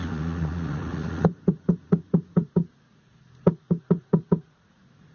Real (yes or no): no